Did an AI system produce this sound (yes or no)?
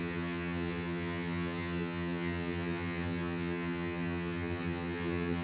yes